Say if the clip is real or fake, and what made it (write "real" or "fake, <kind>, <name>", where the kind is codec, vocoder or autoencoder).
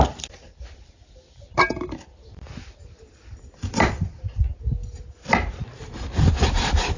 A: real